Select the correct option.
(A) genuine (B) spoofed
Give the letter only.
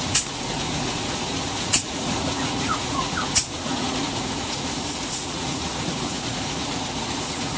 B